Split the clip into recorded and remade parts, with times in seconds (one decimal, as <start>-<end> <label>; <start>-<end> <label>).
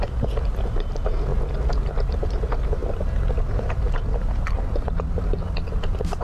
0.0-6.2 remade